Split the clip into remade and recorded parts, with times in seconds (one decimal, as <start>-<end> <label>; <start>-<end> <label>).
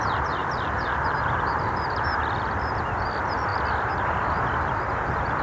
0.0-5.4 recorded